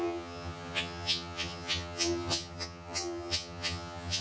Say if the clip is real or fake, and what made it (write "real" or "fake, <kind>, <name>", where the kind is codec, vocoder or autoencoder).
fake, vocoder, HiFi-GAN